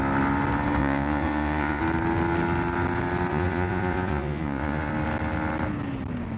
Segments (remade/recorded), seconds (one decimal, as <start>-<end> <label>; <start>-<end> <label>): 0.0-0.8 recorded; 0.8-1.8 remade; 1.8-3.3 recorded; 3.3-4.9 remade; 4.9-6.4 recorded